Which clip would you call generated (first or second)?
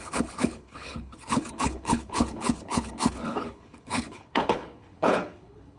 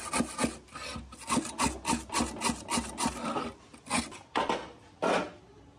first